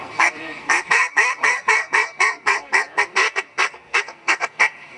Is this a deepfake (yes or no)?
yes